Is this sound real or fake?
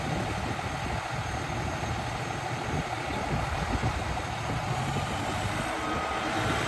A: real